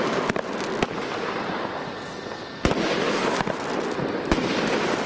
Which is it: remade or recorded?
recorded